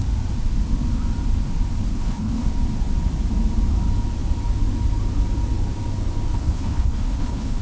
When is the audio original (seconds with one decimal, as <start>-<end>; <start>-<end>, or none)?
0.0-1.9; 2.5-6.3